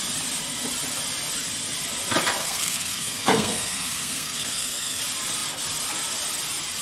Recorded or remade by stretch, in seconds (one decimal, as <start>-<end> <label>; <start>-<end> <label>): 0.0-2.4 recorded; 2.4-5.0 remade; 5.0-6.8 recorded